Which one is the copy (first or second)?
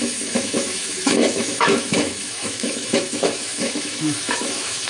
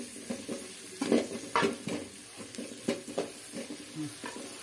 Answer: first